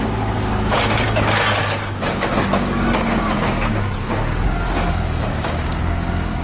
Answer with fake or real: fake